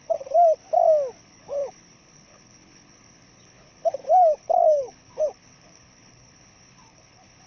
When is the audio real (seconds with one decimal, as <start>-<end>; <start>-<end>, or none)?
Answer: 0.6-1.2